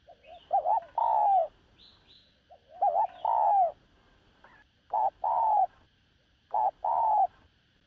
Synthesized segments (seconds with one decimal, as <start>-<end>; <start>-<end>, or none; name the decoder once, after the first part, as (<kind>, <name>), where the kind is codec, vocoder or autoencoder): 0.0-1.2 (vocoder, BigVGAN v2); 4.2-7.9